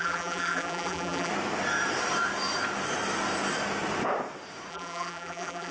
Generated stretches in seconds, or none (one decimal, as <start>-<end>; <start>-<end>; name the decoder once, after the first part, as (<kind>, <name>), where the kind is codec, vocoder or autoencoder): 0.0-1.3 (vocoder, BigVGAN v2); 4.7-5.7